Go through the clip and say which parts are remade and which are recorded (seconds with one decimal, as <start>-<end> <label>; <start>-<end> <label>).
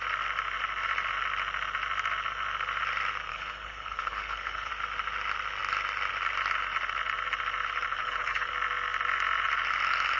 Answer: 0.0-3.3 recorded; 3.3-4.7 remade; 4.7-7.9 recorded; 7.9-8.5 remade; 8.5-10.2 recorded